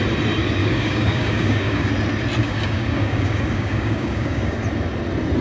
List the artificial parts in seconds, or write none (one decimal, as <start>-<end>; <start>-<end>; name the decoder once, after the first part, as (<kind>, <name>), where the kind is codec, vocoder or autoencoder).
0.6-1.9 (codec, DAC); 2.4-4.6